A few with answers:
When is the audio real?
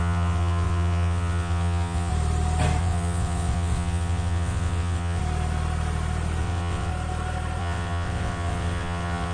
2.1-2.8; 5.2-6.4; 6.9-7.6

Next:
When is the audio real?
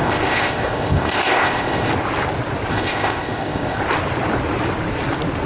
1.9-2.7; 3.8-5.5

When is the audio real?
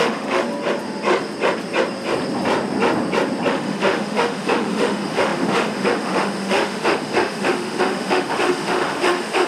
0.4-3.5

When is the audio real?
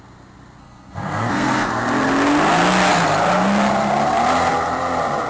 0.0-0.6; 1.7-5.3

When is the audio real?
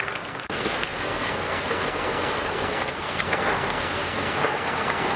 none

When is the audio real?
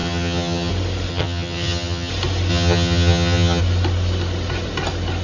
0.7-1.1; 2.1-2.5; 3.6-5.2